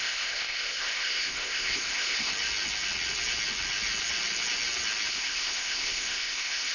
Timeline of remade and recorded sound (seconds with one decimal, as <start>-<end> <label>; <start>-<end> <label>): 0.0-2.3 remade; 2.3-5.1 recorded; 5.1-6.7 remade